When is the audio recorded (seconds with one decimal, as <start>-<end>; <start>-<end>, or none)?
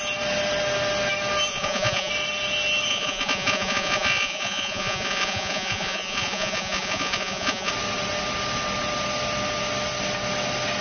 0.0-1.5; 2.1-2.9; 7.7-10.8